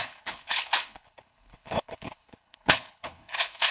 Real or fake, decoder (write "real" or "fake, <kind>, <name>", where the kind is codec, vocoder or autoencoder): fake, codec, HILCodec